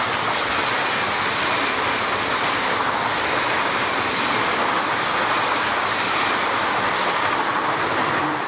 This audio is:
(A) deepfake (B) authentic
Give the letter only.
B